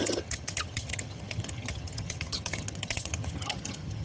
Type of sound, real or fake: fake